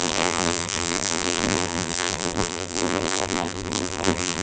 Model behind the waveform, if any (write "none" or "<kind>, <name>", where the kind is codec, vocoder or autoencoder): vocoder, BigVGAN v2